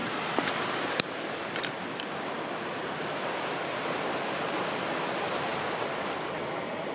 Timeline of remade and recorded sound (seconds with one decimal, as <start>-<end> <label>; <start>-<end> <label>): 0.0-6.9 recorded